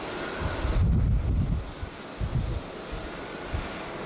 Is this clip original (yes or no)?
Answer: yes